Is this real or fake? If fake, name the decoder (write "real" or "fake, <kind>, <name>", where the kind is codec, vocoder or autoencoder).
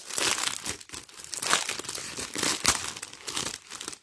real